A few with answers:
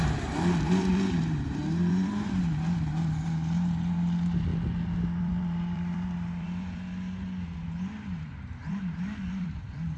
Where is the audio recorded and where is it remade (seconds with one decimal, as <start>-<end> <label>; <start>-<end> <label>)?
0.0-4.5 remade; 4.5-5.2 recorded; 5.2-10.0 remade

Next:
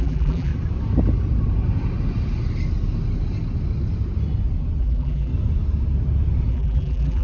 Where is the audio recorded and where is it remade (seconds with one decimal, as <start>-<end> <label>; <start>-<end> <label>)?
0.0-0.5 remade; 0.5-4.8 recorded; 4.8-5.3 remade; 5.3-6.5 recorded; 6.5-7.2 remade

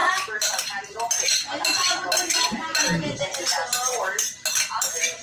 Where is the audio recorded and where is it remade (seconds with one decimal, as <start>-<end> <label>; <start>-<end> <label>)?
0.0-5.2 recorded

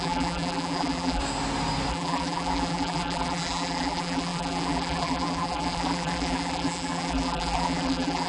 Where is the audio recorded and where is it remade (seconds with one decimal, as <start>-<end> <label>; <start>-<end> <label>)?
0.0-1.2 remade; 1.2-1.9 recorded; 1.9-8.3 remade

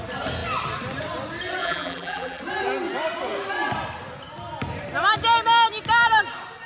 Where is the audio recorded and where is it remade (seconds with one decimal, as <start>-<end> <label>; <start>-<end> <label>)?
0.0-1.6 recorded; 1.6-2.4 remade; 2.4-6.7 recorded